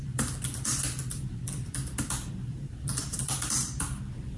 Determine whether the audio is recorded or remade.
remade